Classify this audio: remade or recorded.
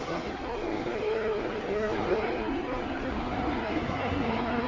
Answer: remade